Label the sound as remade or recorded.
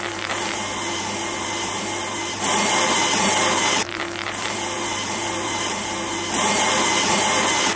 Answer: remade